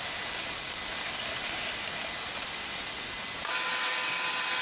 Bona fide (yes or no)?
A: yes